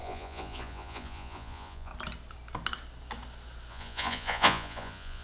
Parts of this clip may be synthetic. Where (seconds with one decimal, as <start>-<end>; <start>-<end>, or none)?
0.0-1.9; 3.7-5.2